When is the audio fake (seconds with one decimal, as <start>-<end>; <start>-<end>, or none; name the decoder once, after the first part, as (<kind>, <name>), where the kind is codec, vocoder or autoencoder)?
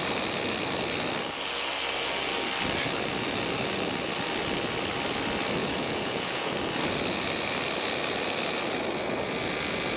5.6-6.5 (vocoder, Vocos)